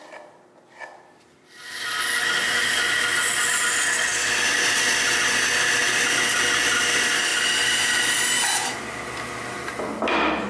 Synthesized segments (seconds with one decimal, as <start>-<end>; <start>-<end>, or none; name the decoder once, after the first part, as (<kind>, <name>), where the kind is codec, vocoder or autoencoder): none